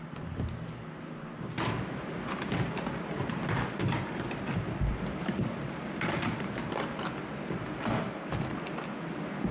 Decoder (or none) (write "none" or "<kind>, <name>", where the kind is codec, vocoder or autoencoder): none